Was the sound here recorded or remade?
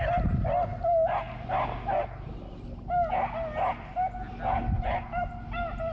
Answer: recorded